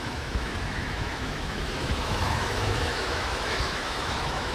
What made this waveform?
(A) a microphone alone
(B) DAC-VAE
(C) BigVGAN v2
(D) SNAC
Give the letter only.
B